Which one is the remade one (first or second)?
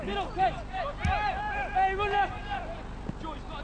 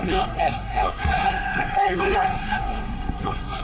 second